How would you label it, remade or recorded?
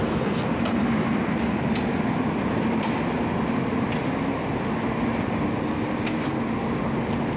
recorded